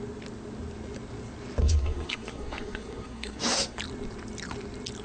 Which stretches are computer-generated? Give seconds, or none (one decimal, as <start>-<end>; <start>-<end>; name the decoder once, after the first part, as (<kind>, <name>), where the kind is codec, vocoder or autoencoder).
1.6-3.8 (codec, SNAC)